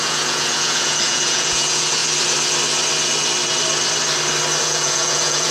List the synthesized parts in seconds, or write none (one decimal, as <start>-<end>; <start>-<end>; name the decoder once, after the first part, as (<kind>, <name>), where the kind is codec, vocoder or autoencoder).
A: 0.0-2.0 (vocoder, Vocos); 4.6-5.5